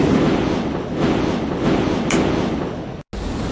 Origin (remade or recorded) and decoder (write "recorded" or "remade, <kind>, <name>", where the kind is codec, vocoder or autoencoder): recorded